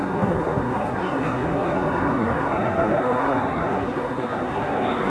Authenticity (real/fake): fake